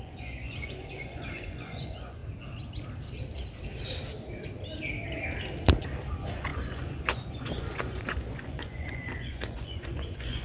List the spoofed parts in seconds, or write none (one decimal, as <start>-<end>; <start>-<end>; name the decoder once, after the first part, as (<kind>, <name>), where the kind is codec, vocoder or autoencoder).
0.0-2.2 (vocoder, Vocos); 6.1-10.4